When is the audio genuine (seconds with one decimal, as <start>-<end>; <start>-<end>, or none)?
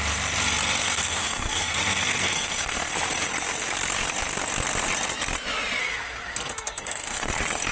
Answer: 0.0-0.8; 2.9-5.8; 7.3-7.7